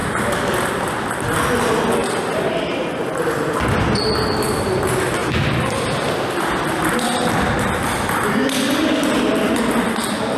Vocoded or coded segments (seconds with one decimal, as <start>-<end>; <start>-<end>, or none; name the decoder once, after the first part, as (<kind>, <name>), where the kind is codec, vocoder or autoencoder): 0.0-0.7 (vocoder, BigVGAN v2); 2.0-3.0; 5.2-9.6